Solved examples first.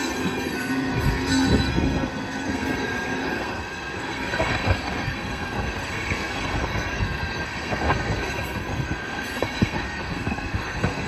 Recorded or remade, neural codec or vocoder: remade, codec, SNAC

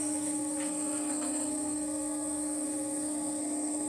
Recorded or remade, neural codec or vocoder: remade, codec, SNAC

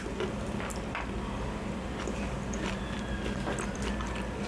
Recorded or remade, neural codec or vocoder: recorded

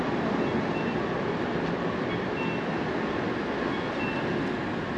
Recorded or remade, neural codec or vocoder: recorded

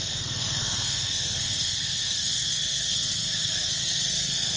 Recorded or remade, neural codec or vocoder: remade, codec, SNAC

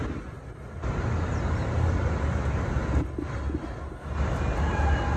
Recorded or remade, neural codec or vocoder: recorded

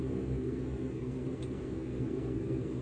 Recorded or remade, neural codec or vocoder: remade, codec, SNAC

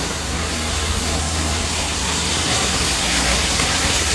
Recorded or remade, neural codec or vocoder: remade, codec, SNAC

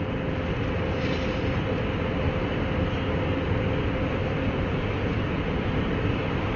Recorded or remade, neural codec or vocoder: recorded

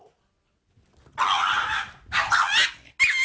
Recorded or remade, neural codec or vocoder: recorded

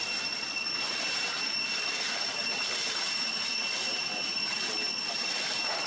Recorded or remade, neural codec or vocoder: recorded